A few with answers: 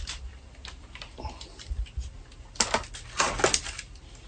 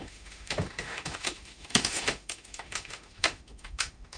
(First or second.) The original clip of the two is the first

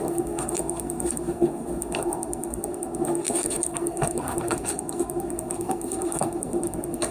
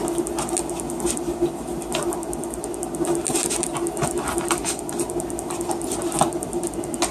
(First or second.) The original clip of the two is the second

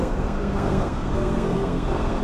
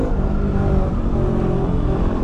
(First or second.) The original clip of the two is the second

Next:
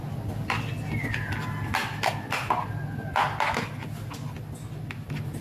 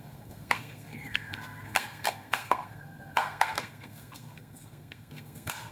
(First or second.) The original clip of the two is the first